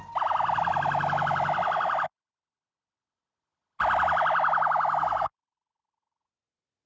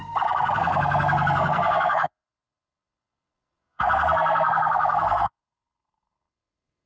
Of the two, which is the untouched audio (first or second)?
first